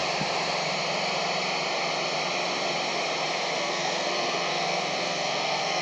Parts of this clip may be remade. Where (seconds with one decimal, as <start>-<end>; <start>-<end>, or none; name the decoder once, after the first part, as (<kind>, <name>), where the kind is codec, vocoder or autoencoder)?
3.5-5.8 (codec, SNAC)

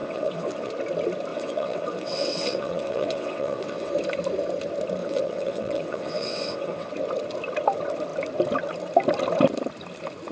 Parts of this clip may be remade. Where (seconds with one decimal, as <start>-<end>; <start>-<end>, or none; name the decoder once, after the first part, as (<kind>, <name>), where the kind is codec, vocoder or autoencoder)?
0.0-0.7 (vocoder, WaveNeXt); 1.3-3.9; 5.0-6.9

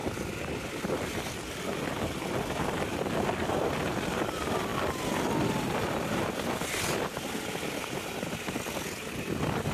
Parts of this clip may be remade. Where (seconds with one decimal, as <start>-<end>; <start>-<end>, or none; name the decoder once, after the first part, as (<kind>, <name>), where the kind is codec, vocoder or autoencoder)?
none

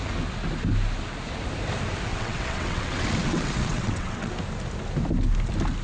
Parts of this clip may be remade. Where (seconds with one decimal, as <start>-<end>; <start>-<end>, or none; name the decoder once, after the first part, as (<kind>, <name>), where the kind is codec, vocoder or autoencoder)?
2.1-4.3 (vocoder, WaveNeXt)

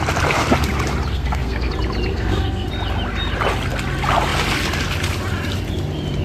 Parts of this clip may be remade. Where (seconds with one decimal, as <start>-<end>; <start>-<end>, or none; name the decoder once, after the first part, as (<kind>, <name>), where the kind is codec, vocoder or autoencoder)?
1.1-1.7 (codec, SNAC); 2.1-2.7

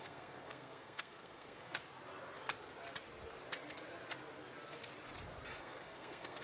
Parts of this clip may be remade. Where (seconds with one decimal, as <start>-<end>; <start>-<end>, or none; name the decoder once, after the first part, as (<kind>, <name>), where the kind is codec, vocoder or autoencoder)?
0.0-1.8 (codec, SNAC); 5.6-6.4

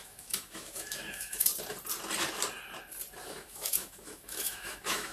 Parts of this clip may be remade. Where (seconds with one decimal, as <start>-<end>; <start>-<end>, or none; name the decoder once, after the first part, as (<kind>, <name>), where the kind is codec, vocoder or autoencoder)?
0.0-1.5 (autoencoder, DAC-VAE); 3.2-5.1